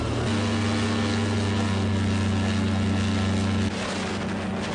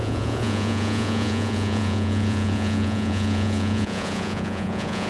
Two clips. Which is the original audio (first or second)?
first